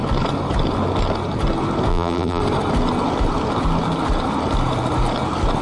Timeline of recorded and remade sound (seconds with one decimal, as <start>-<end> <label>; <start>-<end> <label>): 0.0-1.9 recorded; 1.9-2.4 remade; 2.4-5.6 recorded